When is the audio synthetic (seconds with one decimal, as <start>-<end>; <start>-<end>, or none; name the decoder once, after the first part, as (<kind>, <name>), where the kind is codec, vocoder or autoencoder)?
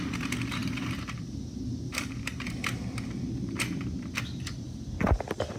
0.6-1.4 (vocoder, BigVGAN v2); 1.9-3.6